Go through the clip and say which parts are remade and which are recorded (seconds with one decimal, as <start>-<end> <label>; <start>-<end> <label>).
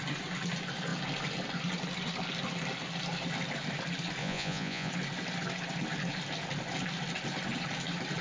0.0-4.2 recorded; 4.2-4.9 remade; 4.9-8.2 recorded